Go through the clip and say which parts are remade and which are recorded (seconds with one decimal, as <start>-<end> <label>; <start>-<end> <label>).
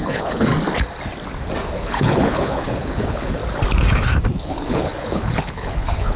0.0-0.5 remade; 0.5-1.8 recorded; 1.8-3.4 remade; 3.4-4.4 recorded; 4.4-6.2 remade